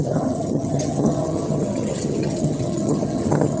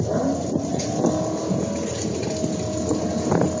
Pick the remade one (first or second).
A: first